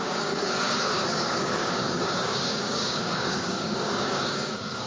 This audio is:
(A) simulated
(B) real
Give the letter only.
A